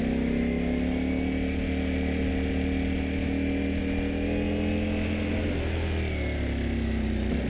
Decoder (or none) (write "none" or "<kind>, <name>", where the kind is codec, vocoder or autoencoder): none